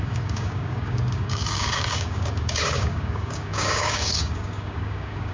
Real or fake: fake